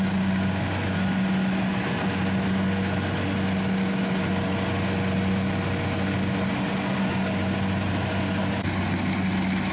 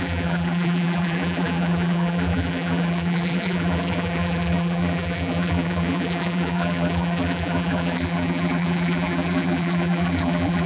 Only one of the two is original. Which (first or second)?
first